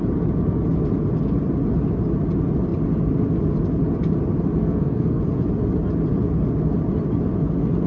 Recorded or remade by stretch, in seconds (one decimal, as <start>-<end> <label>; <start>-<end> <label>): 0.0-4.6 recorded; 4.6-5.2 remade; 5.2-7.9 recorded